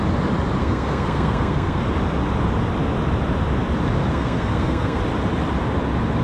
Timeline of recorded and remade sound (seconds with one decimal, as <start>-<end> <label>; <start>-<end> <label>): 0.0-0.6 recorded; 0.6-1.8 remade; 1.8-4.1 recorded; 4.1-5.0 remade; 5.0-6.2 recorded